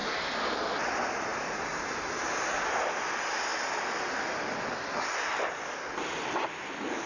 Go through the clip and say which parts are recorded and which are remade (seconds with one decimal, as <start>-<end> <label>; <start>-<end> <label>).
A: 0.0-0.6 remade; 0.6-1.3 recorded; 1.3-2.0 remade; 2.0-7.1 recorded